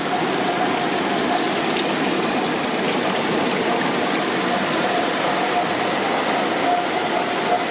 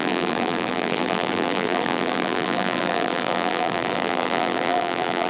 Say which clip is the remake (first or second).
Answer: second